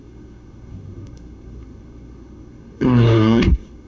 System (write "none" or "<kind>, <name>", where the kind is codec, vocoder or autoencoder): codec, SNAC